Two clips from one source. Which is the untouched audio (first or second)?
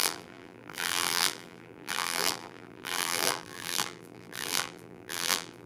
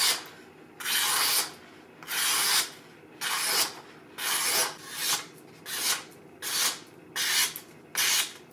second